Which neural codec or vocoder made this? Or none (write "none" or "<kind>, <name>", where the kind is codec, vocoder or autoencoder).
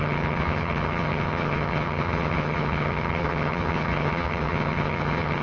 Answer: vocoder, HiFi-GAN